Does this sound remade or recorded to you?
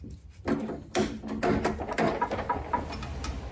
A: recorded